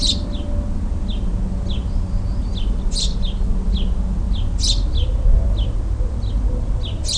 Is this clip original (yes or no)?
yes